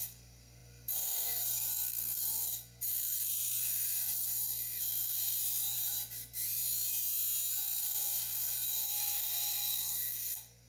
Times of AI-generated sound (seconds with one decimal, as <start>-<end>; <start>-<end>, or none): 0.0-5.4; 7.8-10.7